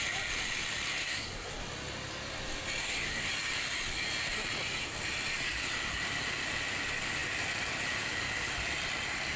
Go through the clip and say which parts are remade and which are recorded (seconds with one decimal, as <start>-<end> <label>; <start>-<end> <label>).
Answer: 0.0-1.0 recorded; 1.0-1.6 remade; 1.6-2.8 recorded; 2.8-3.3 remade; 3.3-9.4 recorded